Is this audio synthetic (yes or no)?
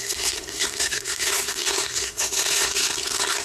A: yes